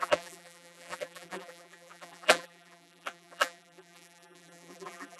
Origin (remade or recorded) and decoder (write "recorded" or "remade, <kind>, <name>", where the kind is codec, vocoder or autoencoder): remade, vocoder, BigVGAN v2